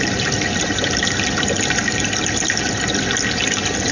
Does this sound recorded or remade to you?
recorded